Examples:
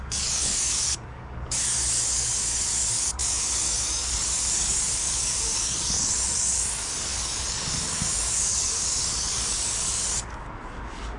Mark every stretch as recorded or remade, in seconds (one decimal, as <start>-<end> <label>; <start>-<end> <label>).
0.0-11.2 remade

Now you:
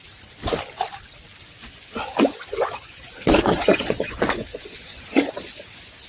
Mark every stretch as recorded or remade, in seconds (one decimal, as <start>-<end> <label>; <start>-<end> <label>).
0.0-1.6 recorded; 1.6-5.3 remade; 5.3-6.1 recorded

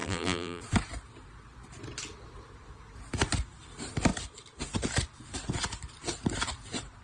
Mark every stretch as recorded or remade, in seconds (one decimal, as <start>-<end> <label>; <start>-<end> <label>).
0.0-0.6 remade; 0.6-7.0 recorded

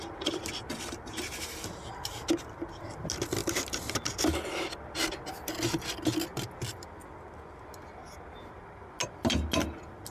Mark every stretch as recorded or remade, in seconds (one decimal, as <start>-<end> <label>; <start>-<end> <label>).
0.0-10.1 recorded